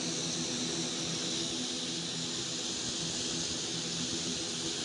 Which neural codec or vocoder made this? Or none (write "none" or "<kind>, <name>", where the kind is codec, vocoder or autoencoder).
none